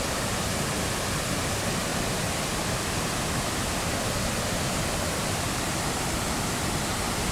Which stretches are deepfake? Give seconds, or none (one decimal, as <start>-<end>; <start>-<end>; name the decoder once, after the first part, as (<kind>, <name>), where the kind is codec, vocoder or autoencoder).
1.9-6.0 (vocoder, BigVGAN v2)